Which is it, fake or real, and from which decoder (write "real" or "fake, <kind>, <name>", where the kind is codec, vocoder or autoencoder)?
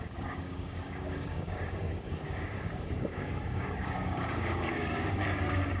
fake, codec, DAC